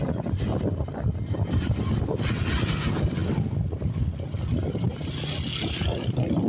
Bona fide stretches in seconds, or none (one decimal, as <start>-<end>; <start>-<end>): 0.0-6.5